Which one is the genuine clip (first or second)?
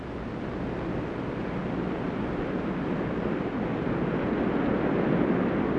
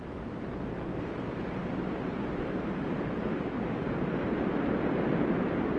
first